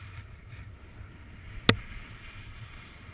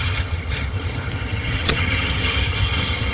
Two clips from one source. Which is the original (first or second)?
first